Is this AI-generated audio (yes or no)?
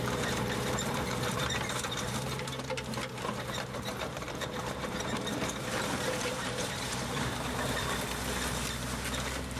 yes